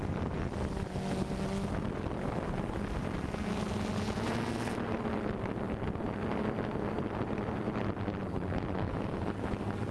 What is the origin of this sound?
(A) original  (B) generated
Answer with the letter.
A